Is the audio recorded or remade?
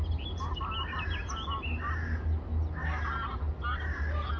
recorded